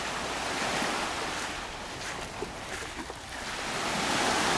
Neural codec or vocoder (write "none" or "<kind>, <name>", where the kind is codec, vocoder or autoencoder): none